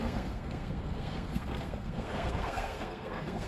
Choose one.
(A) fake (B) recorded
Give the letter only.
A